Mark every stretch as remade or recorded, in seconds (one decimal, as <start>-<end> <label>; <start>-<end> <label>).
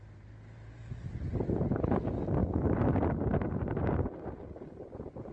0.0-5.3 recorded